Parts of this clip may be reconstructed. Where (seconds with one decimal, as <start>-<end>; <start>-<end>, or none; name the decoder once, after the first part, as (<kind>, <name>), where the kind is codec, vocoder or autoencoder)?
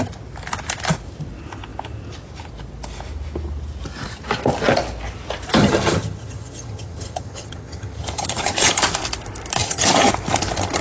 5.6-8.8 (vocoder, HiFi-GAN); 9.6-10.1